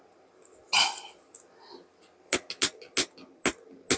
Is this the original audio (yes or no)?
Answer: yes